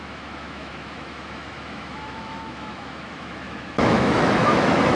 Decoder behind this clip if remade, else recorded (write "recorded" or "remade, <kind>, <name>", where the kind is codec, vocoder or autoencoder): remade, autoencoder, DAC-VAE